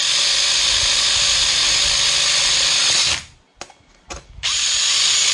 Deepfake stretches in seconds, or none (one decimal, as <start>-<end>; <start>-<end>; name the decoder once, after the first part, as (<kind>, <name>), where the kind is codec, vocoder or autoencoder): none

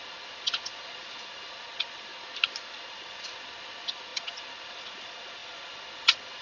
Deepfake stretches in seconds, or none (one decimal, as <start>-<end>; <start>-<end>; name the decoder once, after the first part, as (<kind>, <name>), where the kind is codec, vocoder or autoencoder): 0.0-2.1 (vocoder, Vocos); 2.9-6.4

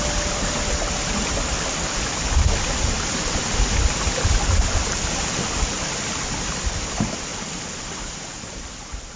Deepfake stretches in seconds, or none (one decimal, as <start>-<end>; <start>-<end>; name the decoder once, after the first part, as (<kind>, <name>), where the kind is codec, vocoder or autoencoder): none

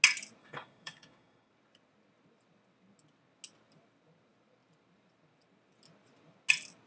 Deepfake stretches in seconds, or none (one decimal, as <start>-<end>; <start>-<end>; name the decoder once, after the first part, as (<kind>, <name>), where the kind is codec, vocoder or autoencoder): 0.4-1.5 (codec, DAC)

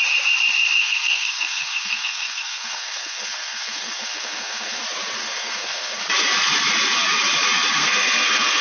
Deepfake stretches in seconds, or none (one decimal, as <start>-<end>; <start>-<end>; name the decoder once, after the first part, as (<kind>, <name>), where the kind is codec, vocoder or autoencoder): 0.8-4.8 (codec, SNAC); 5.2-6.0; 7.8-8.6

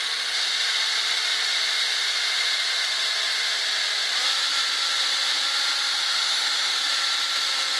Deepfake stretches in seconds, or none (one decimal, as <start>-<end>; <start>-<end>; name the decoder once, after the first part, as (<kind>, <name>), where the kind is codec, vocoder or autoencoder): 5.9-6.8 (autoencoder, DAC-VAE)

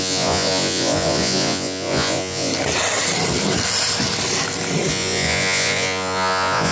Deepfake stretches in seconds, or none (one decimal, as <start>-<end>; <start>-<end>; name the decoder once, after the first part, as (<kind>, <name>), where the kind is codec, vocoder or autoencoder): 0.0-2.5 (vocoder, Vocos); 4.9-6.7